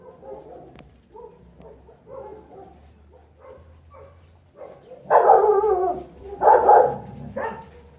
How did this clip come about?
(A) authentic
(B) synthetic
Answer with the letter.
A